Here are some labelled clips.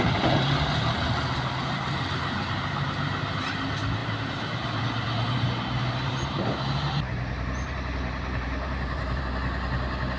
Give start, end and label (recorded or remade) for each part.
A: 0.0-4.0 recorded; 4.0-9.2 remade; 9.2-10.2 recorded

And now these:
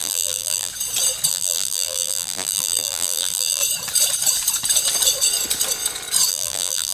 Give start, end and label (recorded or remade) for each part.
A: 0.0-0.7 remade; 0.7-1.3 recorded; 1.3-3.6 remade; 3.6-6.3 recorded; 6.3-6.9 remade

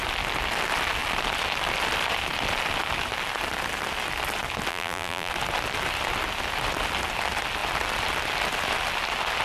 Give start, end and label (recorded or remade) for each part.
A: 0.0-4.7 recorded; 4.7-5.3 remade; 5.3-9.4 recorded

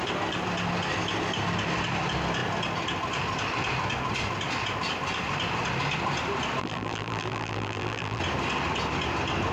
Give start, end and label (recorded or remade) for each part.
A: 0.0-6.6 recorded; 6.6-8.2 remade; 8.2-9.5 recorded

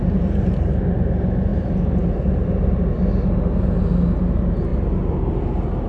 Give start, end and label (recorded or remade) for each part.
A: 0.0-1.5 recorded; 1.5-3.1 remade; 3.1-5.9 recorded